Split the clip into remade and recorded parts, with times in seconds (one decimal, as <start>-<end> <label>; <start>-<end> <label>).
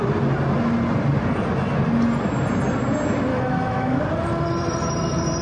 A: 0.0-3.3 recorded; 3.3-4.0 remade; 4.0-5.4 recorded